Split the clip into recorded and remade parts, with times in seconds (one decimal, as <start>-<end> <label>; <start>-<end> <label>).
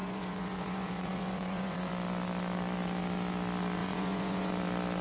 0.0-1.9 remade; 1.9-3.8 recorded; 3.8-4.5 remade; 4.5-5.0 recorded